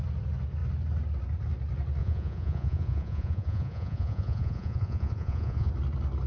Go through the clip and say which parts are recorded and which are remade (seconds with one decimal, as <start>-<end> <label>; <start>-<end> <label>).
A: 0.0-2.0 recorded; 2.0-5.7 remade; 5.7-6.3 recorded